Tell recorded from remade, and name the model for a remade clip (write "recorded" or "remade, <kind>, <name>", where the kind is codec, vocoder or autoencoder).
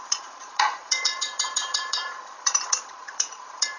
remade, vocoder, Vocos